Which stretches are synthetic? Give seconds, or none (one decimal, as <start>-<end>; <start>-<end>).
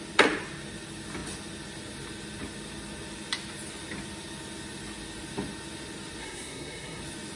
6.2-7.0